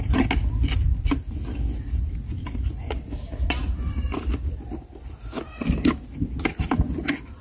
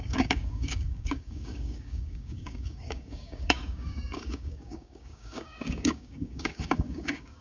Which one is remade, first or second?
second